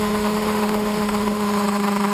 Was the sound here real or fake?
fake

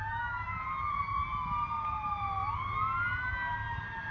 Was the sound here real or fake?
real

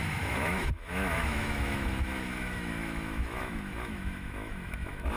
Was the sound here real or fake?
fake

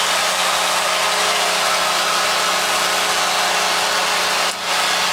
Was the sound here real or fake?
real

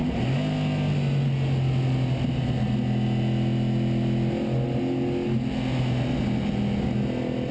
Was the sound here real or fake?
real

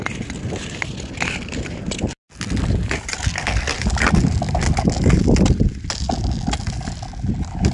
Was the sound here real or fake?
real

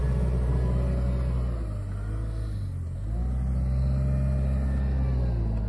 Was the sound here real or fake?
real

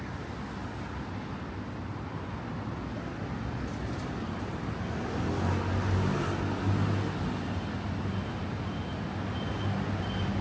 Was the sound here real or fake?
real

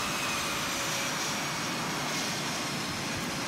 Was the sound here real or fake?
real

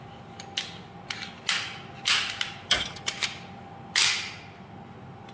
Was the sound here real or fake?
real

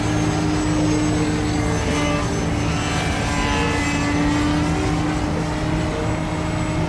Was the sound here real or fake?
real